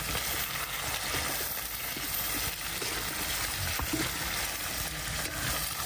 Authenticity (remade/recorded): recorded